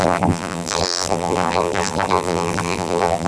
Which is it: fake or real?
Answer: fake